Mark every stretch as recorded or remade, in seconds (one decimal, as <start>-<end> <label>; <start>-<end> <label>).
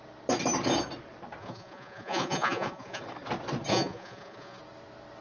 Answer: 0.0-1.4 recorded; 1.4-3.0 remade; 3.0-3.7 recorded; 3.7-4.6 remade; 4.6-5.2 recorded